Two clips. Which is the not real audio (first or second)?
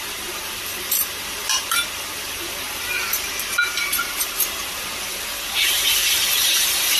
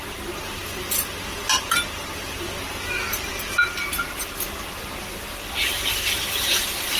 first